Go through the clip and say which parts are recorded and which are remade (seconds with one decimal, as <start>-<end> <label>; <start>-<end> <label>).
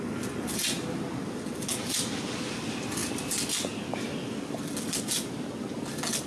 0.0-6.3 recorded